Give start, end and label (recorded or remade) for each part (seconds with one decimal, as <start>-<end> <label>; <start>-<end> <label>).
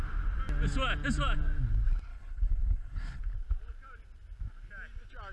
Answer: 0.0-2.1 recorded; 2.1-3.2 remade; 3.2-5.3 recorded